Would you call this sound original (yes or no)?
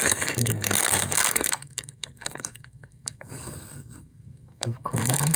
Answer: no